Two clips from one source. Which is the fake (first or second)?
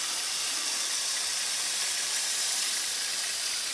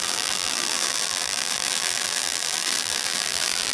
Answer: second